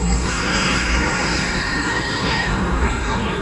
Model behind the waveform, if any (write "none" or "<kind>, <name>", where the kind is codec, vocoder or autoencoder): codec, SNAC